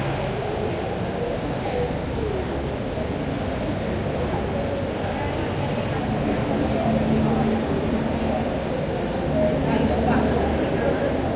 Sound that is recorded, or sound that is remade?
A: recorded